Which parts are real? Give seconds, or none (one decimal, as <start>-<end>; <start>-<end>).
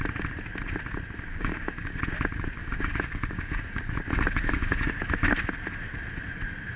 0.0-1.3; 2.0-2.6; 5.1-6.8